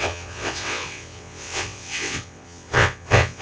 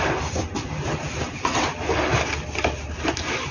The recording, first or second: second